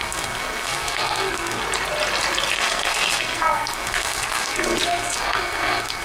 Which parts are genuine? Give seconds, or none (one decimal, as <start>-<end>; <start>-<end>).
1.6-2.5